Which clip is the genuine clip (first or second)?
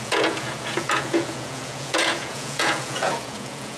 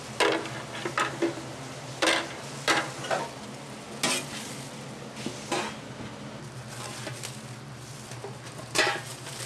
second